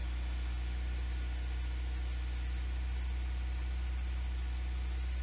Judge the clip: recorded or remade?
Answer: recorded